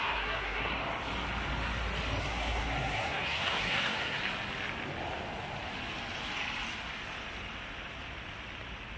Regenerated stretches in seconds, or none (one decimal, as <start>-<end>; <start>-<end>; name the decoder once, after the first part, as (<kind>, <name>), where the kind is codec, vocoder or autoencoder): 0.0-0.8 (codec, SNAC); 2.2-4.2